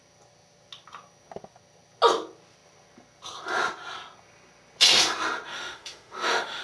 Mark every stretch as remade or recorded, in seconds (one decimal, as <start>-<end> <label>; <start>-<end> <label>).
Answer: 0.0-5.5 recorded; 5.5-6.6 remade